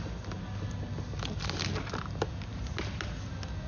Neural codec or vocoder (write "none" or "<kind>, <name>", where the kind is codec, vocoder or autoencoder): none